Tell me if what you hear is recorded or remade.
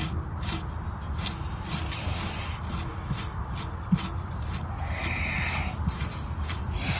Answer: recorded